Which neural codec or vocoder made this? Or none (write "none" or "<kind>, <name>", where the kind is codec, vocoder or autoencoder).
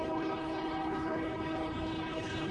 codec, HILCodec